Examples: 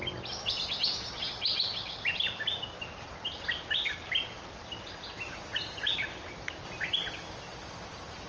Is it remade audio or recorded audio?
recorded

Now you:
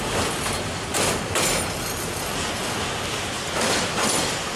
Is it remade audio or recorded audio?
recorded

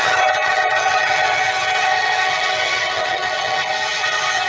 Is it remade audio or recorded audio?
remade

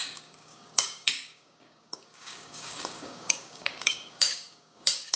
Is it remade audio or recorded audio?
remade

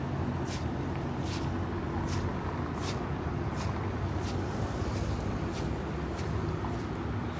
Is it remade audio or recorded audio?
recorded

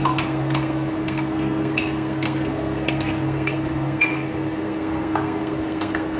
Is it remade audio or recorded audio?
remade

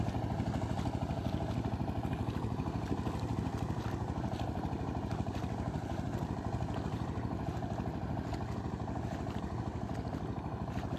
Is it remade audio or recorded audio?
recorded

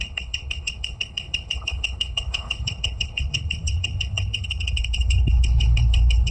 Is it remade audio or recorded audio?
remade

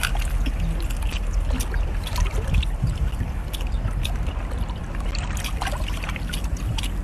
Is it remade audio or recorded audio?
remade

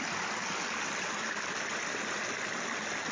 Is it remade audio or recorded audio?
recorded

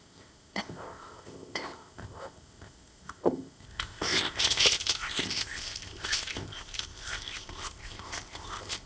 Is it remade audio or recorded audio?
remade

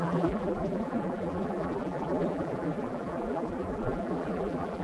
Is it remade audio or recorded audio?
remade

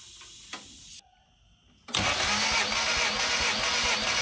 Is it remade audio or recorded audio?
recorded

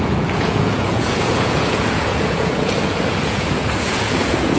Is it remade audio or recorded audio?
remade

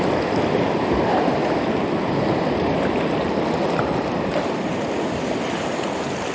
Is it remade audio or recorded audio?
recorded